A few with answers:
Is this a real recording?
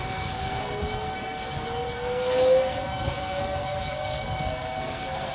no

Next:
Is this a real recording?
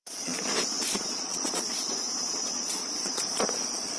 no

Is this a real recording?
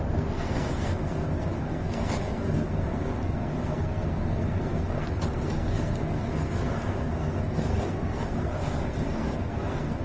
no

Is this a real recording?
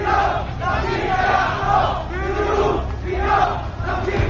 yes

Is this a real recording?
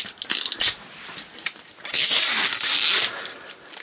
yes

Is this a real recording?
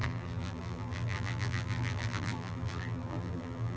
no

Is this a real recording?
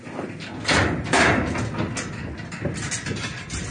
yes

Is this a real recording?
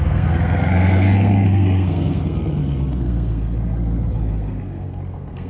no